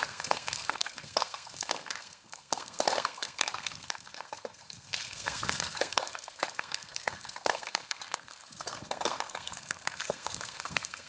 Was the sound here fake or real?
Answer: fake